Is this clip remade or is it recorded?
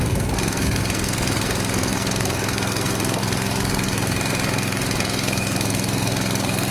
remade